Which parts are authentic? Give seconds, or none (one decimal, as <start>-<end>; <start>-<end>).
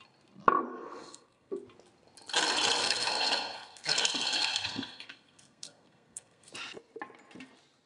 0.0-0.7; 1.5-2.8; 6.5-7.9